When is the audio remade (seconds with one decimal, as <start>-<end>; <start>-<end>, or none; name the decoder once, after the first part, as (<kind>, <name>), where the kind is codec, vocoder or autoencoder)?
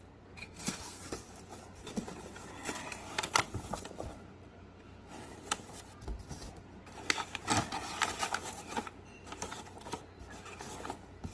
0.4-1.0 (codec, SNAC)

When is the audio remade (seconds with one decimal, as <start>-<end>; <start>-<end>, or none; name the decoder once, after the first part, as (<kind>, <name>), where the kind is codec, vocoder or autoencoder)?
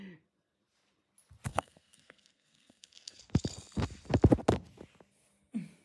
1.5-3.2 (codec, SNAC)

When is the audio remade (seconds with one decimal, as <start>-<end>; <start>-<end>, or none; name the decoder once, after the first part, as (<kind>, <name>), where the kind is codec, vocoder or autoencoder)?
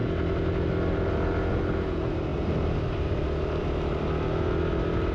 none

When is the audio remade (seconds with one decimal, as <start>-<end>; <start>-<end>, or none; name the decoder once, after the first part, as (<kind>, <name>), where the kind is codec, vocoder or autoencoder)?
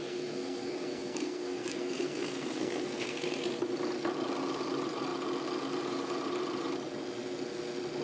0.0-3.4 (codec, SNAC)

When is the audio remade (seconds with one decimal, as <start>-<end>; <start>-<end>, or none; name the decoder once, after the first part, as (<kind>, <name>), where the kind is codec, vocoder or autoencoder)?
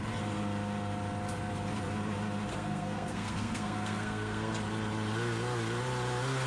2.5-4.5 (codec, SNAC)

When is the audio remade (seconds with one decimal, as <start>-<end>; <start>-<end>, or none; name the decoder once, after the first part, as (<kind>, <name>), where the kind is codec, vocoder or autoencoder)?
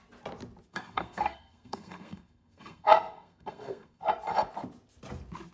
0.7-4.0 (codec, SNAC)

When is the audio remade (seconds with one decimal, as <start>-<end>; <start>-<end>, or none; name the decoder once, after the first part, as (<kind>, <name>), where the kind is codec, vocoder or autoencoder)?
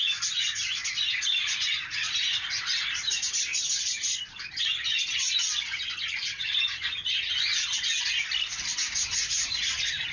none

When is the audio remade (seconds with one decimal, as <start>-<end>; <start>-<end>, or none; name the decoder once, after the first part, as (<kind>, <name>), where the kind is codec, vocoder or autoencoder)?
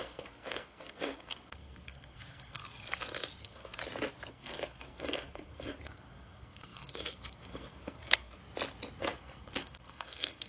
0.0-2.6 (codec, SNAC); 3.4-3.8; 4.3-8.4; 9.0-10.5